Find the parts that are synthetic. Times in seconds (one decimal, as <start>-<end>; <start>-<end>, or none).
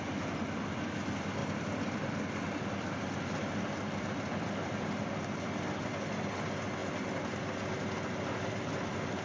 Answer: none